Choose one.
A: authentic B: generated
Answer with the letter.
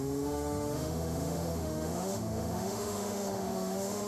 B